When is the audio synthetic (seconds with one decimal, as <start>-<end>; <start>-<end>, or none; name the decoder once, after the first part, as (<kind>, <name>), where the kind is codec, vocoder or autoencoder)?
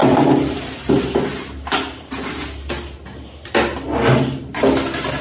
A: 0.0-0.9 (vocoder, BigVGAN v2)